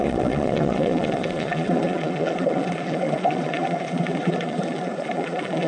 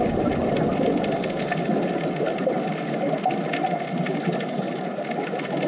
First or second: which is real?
second